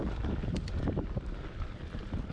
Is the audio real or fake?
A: fake